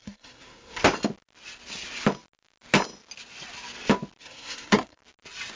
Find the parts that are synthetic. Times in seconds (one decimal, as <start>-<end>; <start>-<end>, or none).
0.0-0.8; 4.2-5.0